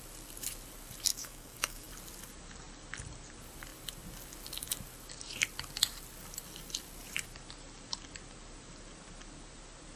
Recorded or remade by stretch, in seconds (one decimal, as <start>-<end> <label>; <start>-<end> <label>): 0.0-1.1 recorded; 1.1-1.9 remade; 1.9-10.0 recorded